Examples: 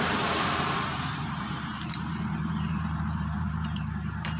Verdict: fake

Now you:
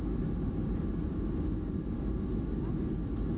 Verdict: real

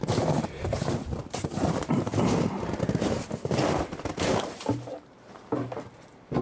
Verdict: fake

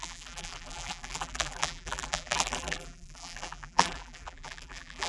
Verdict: fake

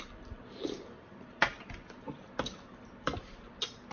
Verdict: real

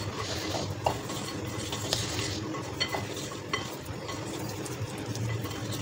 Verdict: real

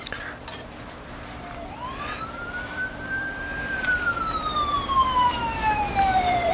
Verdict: fake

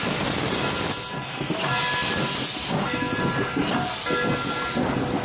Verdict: real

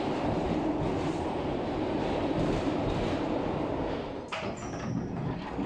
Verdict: real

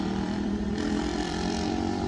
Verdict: fake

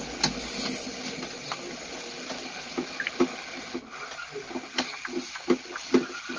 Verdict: real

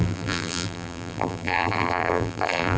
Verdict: fake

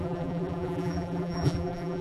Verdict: fake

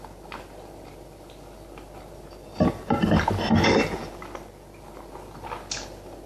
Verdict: real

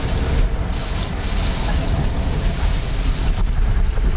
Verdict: real